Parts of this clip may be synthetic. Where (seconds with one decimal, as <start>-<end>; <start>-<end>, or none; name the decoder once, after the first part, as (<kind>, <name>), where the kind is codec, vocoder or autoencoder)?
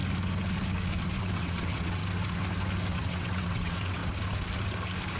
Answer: 1.2-2.0 (vocoder, WaveNeXt); 2.9-4.0